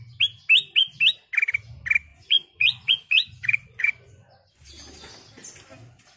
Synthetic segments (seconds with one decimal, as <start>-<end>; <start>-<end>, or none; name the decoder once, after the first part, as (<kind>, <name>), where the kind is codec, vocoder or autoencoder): 2.1-4.7 (vocoder, Vocos)

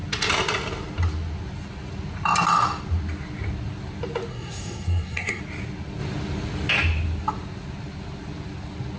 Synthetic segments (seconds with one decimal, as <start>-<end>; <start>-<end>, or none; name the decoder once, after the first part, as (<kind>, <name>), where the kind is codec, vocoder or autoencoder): 4.3-5.4 (codec, SNAC)

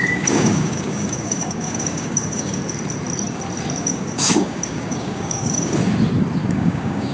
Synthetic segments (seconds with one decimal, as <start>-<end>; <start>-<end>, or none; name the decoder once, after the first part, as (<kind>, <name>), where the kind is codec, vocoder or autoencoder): 0.0-2.6 (codec, DAC); 3.8-5.8; 6.5-7.1

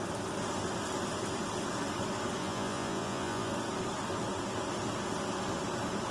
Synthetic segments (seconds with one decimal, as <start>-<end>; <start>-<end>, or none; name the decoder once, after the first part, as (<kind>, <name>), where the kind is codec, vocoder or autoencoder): 2.4-3.5 (vocoder, Vocos)

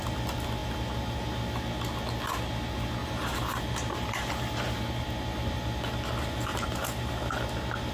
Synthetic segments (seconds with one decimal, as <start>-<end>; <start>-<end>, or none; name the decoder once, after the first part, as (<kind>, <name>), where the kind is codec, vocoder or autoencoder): 3.0-4.6 (vocoder, BigVGAN v2); 6.5-7.1

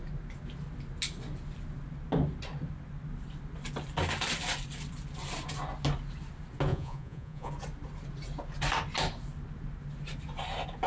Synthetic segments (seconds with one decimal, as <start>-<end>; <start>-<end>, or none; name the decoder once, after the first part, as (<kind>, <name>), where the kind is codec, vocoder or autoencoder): 6.7-7.5 (vocoder, Vocos)